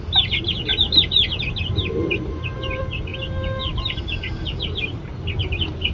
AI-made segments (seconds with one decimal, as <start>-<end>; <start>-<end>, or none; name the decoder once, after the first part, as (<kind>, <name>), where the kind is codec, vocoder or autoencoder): 0.0-0.7 (vocoder, BigVGAN v2); 1.6-3.1; 4.0-5.9